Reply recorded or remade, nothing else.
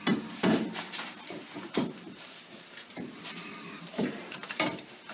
remade